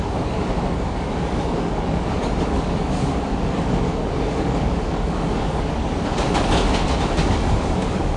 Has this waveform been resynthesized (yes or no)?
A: yes